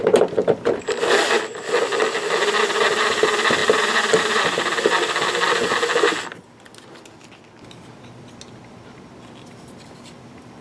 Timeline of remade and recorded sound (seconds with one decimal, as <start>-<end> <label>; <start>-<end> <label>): 0.0-0.4 recorded; 0.4-1.3 remade; 1.3-3.6 recorded; 3.6-5.5 remade; 5.5-10.6 recorded